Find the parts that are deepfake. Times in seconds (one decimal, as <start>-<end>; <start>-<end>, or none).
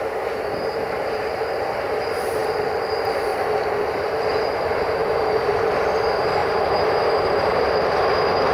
5.0-5.5; 6.4-8.5